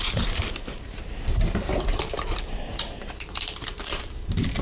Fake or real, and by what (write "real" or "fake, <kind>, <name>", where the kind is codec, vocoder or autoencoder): fake, vocoder, BigVGAN v2